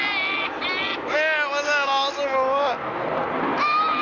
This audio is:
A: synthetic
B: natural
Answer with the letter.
B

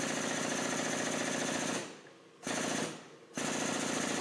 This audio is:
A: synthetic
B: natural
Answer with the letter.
B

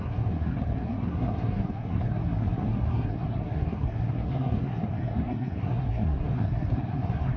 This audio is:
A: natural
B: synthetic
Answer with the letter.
B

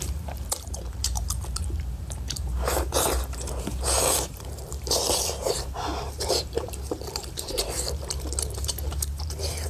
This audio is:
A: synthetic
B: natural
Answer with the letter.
A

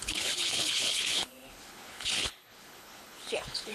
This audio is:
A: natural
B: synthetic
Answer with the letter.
B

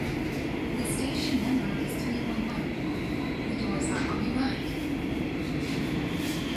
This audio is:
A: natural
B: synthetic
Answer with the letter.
A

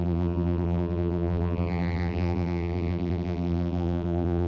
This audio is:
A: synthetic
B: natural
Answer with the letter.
A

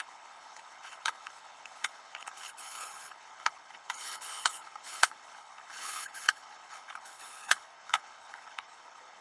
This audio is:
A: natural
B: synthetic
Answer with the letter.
B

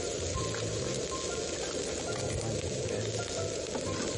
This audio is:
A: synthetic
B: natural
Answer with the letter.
B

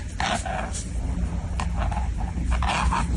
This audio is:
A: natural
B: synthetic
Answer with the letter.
A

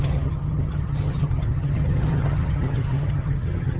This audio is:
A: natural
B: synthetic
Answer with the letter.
B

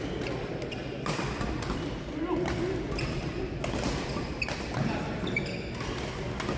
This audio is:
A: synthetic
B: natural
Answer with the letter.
B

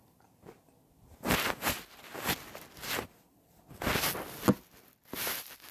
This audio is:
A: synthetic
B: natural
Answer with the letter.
B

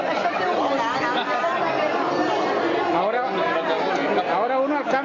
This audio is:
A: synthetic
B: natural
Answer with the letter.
B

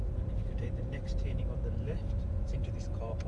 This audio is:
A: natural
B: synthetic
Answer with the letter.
B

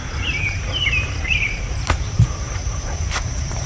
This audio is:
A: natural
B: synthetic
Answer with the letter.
B